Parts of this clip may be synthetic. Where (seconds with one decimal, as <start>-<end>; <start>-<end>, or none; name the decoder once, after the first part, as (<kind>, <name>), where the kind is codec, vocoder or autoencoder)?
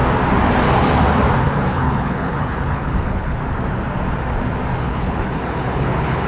1.4-3.4 (codec, HILCodec); 4.8-6.3